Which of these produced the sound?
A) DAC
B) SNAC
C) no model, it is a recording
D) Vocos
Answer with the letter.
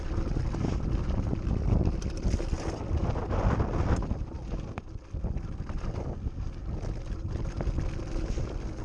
C